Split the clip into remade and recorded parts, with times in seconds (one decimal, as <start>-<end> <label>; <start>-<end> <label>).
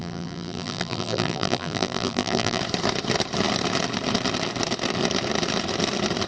0.0-2.6 remade; 2.6-6.3 recorded